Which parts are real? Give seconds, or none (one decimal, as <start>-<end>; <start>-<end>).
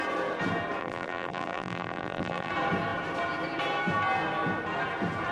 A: 0.0-0.8; 2.5-5.3